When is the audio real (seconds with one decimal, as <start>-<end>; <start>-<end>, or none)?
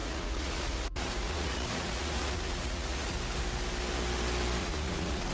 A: 3.2-4.6